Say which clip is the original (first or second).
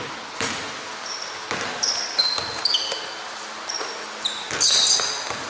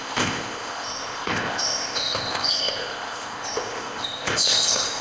first